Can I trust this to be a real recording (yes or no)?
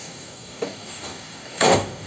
no